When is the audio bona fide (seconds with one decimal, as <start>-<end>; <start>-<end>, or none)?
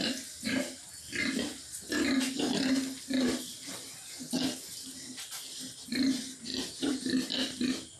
6.5-7.3